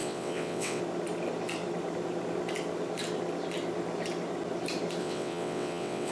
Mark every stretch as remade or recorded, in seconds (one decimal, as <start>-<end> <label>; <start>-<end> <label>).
0.0-0.8 remade; 0.8-5.0 recorded; 5.0-6.1 remade